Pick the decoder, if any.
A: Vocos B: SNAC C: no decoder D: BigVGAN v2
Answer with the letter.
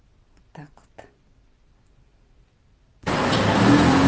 C